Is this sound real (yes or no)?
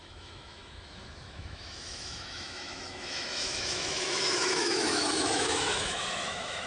no